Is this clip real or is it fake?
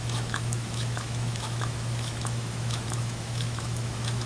fake